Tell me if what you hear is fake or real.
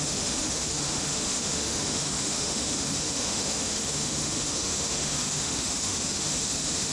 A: fake